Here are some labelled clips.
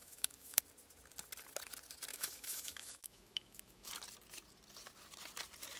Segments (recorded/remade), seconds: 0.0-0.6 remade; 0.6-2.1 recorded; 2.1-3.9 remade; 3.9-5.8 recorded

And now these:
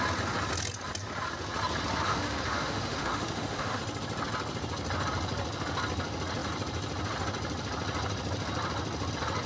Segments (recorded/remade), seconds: 0.0-2.0 recorded; 2.0-3.8 remade; 3.8-9.5 recorded